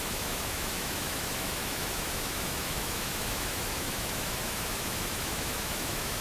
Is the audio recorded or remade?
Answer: remade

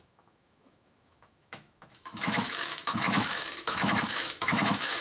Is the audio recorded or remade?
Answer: remade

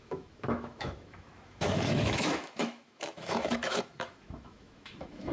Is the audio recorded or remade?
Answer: remade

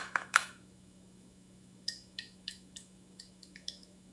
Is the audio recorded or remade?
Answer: remade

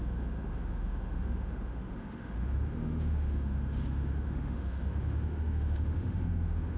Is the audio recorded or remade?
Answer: remade